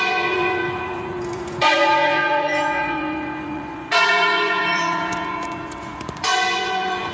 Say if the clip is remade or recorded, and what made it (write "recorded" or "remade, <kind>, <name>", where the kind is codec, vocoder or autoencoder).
remade, vocoder, Vocos